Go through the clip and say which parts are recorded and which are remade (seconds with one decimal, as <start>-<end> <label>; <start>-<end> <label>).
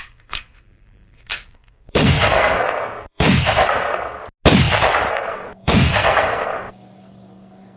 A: 0.0-4.2 remade; 4.2-5.1 recorded; 5.1-7.8 remade